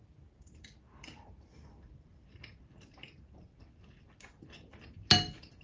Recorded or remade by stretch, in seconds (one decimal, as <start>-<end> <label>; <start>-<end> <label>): 0.0-5.6 recorded